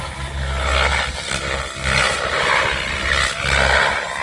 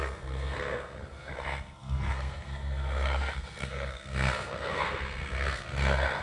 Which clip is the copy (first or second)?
second